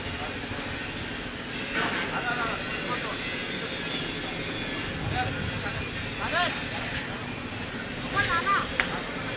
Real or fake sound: real